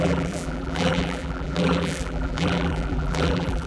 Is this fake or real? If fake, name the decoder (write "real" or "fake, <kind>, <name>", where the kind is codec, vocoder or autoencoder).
fake, vocoder, BigVGAN v2